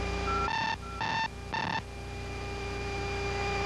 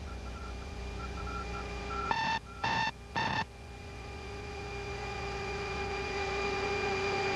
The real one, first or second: first